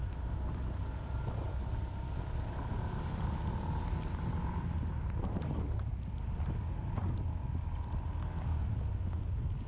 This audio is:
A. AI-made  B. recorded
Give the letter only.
B